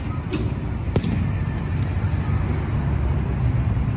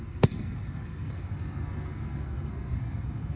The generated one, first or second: second